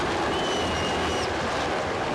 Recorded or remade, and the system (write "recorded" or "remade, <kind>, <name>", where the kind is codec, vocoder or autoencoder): recorded